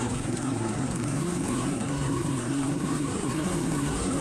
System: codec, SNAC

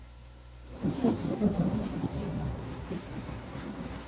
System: codec, SNAC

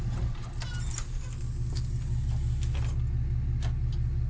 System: none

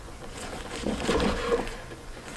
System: vocoder, Vocos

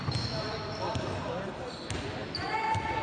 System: none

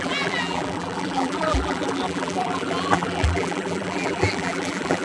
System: vocoder, BigVGAN v2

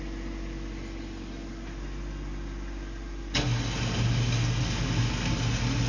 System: none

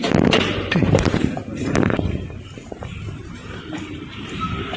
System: vocoder, BigVGAN v2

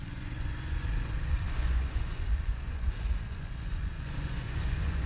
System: vocoder, Vocos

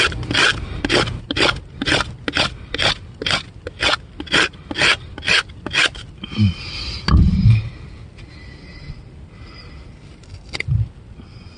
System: none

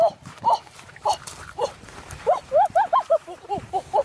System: vocoder, BigVGAN v2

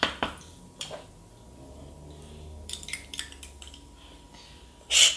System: vocoder, BigVGAN v2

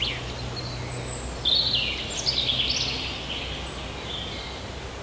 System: none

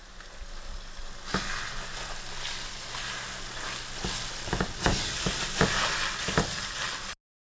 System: none